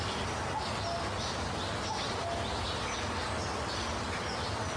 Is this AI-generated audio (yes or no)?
no